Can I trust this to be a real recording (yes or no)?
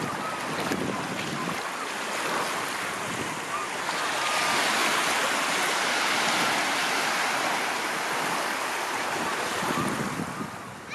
yes